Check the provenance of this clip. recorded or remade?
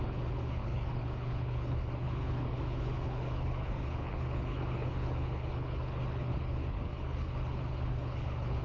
remade